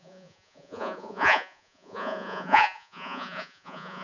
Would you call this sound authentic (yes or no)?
no